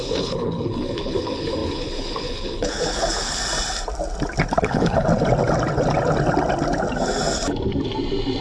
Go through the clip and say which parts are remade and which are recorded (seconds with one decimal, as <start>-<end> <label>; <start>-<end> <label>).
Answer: 0.0-3.4 remade; 3.4-4.6 recorded; 4.6-5.1 remade; 5.1-8.4 recorded

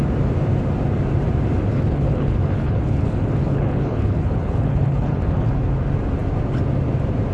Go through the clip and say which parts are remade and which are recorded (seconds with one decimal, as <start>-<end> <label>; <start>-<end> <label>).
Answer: 0.0-1.7 recorded; 1.7-5.5 remade; 5.5-7.3 recorded

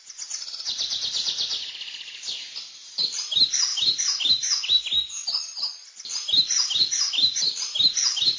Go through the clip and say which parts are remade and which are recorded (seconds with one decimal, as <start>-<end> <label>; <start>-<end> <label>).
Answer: 0.0-8.4 recorded

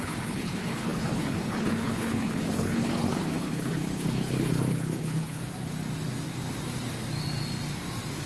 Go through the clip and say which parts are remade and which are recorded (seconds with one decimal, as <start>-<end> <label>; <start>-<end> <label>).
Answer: 0.0-5.4 remade; 5.4-8.3 recorded

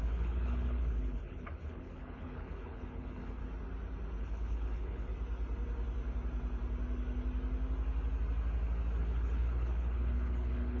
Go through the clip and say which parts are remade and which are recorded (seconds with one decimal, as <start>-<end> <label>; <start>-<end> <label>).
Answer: 0.0-3.4 remade; 3.4-4.2 recorded; 4.2-5.1 remade; 5.1-9.0 recorded; 9.0-10.8 remade

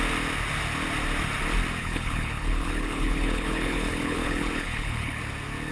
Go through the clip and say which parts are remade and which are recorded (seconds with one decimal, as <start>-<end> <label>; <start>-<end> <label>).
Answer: 0.0-1.8 recorded; 1.8-5.2 remade; 5.2-5.7 recorded